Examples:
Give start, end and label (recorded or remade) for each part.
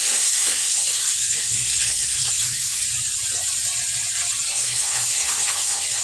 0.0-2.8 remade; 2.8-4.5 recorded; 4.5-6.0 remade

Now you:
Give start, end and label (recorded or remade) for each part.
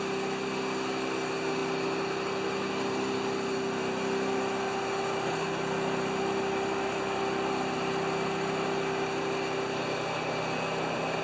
0.0-11.2 recorded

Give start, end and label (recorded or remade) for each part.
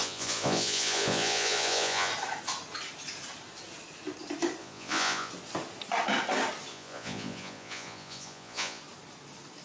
0.0-2.1 remade; 2.1-4.6 recorded; 4.6-5.3 remade; 5.3-6.7 recorded; 6.7-8.8 remade; 8.8-9.6 recorded